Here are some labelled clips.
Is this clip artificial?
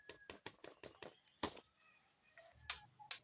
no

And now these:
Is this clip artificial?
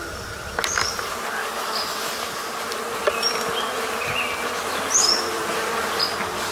no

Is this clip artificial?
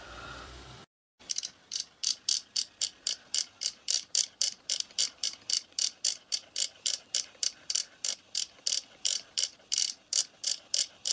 yes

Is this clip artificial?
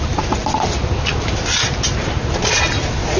no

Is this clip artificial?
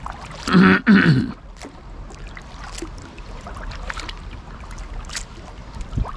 no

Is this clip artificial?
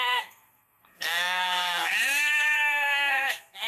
yes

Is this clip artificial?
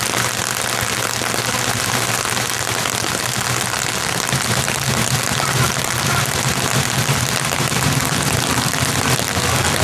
no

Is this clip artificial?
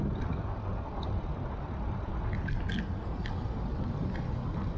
no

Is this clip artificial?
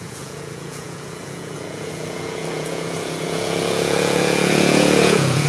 yes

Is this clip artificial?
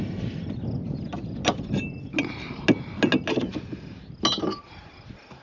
no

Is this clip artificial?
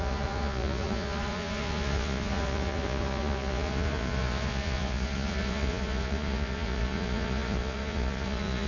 yes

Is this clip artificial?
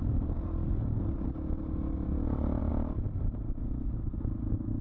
no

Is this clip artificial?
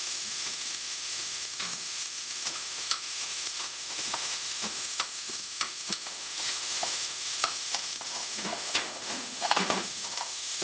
yes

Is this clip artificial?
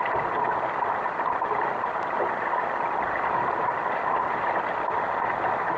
no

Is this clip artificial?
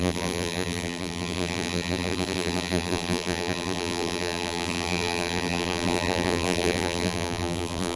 yes